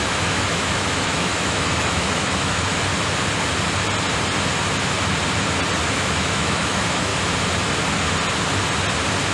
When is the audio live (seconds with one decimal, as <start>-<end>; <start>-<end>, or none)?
2.9-5.9; 7.1-9.3